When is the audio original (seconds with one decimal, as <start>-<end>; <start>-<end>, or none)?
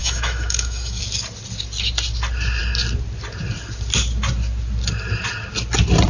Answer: 1.0-6.1